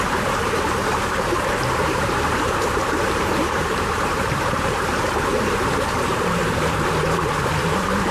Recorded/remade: remade